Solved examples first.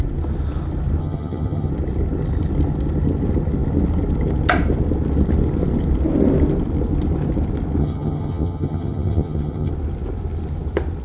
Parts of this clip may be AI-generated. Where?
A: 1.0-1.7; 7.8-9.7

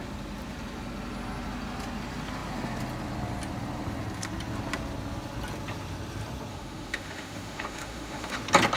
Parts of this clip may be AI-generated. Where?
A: 6.5-8.4